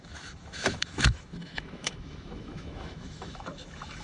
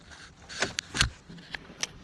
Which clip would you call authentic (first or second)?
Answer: second